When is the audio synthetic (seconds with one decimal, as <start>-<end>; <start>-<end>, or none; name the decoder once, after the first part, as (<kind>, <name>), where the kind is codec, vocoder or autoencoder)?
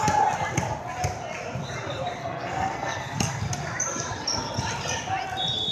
2.2-3.4 (codec, SNAC)